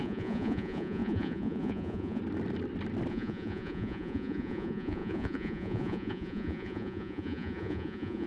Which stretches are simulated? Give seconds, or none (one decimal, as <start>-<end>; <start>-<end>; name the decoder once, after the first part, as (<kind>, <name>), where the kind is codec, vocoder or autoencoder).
0.0-2.2 (vocoder, Vocos); 3.1-8.3